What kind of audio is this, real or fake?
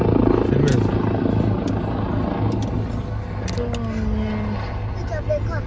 real